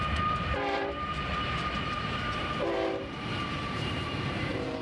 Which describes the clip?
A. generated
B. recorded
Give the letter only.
A